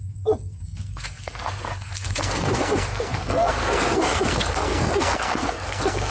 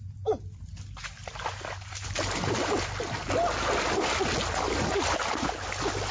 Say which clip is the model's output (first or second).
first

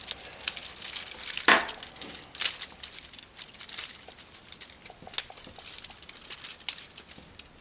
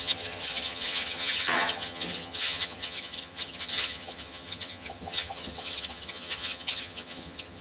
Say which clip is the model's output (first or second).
second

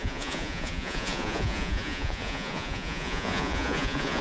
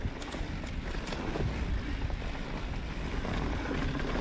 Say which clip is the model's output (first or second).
first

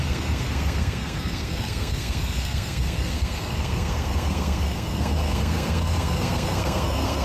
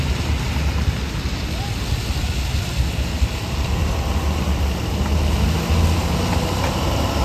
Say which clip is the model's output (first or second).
first